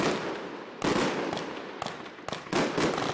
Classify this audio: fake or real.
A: real